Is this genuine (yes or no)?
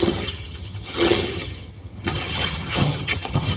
no